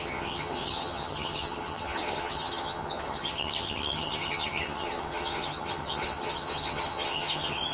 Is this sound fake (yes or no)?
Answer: yes